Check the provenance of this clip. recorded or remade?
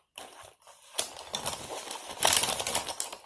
recorded